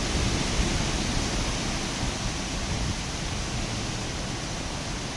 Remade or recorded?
recorded